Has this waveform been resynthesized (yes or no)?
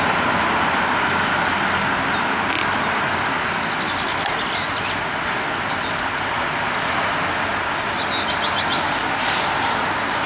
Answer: no